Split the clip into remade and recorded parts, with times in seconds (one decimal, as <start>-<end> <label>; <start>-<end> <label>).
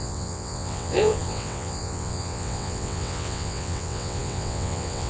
0.0-5.1 remade